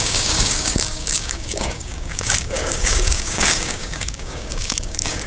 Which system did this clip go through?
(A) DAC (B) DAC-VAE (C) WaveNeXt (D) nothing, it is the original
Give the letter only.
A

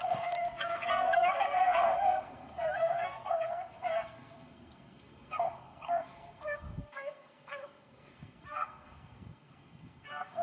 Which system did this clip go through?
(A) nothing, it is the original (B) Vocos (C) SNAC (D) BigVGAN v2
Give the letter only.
C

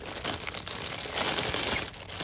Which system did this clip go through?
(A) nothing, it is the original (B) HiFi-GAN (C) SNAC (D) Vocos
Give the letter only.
A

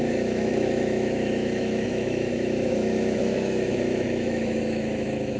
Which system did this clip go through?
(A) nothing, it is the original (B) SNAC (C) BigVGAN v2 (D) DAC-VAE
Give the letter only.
D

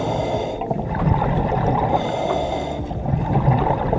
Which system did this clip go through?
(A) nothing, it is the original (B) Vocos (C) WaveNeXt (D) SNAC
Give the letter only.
A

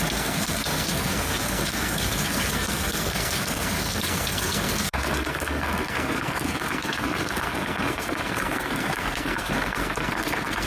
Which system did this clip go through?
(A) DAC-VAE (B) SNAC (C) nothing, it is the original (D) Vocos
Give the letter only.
B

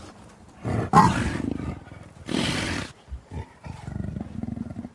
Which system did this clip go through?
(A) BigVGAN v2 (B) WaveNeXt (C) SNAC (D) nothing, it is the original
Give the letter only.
D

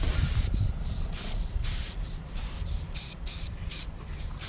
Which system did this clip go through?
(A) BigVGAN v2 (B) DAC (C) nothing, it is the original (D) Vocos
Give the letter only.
A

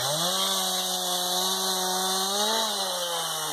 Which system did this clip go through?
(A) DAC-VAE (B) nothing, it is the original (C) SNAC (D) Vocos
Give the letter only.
B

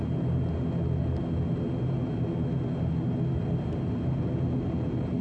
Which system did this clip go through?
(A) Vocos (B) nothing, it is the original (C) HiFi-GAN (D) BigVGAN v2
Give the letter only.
B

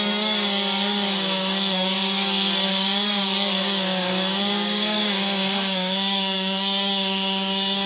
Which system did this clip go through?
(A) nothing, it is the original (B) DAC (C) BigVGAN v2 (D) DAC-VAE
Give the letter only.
B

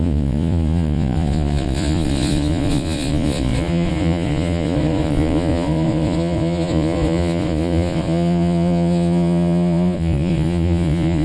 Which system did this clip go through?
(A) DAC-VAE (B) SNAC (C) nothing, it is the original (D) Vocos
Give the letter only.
D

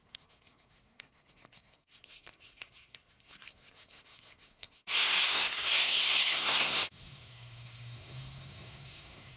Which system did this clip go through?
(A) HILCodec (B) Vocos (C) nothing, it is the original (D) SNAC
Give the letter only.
D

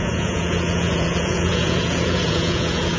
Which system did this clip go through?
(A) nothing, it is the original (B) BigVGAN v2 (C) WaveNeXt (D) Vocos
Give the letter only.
D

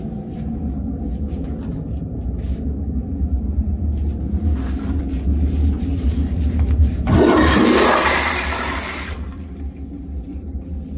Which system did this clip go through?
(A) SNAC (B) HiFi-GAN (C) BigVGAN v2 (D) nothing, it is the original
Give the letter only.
C